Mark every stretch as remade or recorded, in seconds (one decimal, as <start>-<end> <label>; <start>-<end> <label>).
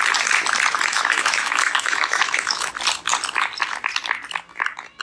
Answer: 0.0-0.9 recorded; 0.9-2.7 remade; 2.7-5.0 recorded